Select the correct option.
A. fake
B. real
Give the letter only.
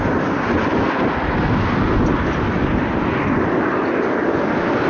B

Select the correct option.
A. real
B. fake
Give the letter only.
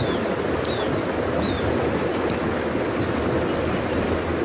A